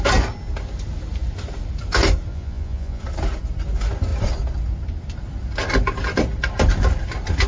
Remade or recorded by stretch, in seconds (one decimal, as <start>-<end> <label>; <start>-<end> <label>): 0.0-2.3 recorded; 2.3-3.0 remade; 3.0-7.5 recorded